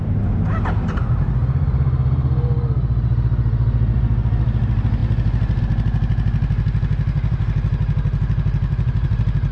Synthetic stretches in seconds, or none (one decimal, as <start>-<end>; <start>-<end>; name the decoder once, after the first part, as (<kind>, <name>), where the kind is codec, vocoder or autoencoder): none